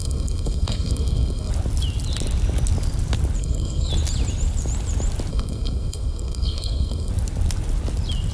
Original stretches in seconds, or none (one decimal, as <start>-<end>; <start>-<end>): 1.5-3.4; 3.9-5.3; 7.1-8.3